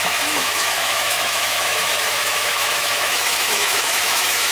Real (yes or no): no